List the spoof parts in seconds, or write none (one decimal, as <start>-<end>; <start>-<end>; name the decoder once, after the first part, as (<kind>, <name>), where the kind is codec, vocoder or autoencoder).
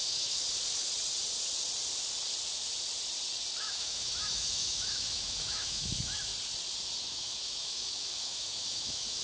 0.0-0.4 (autoencoder, DAC-VAE); 3.6-6.3; 7.1-9.2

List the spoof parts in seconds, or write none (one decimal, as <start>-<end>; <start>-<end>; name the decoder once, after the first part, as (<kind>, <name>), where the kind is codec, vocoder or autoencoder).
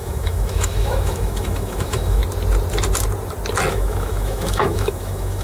0.0-2.2 (autoencoder, DAC-VAE); 3.7-5.4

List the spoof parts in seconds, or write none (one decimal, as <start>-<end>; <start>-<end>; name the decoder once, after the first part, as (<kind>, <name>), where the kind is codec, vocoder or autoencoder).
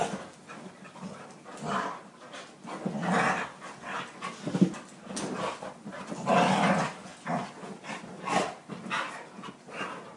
none